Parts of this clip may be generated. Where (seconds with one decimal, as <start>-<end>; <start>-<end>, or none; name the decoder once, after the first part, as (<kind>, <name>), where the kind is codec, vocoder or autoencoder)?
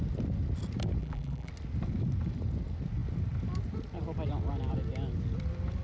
1.0-1.5 (vocoder, BigVGAN v2)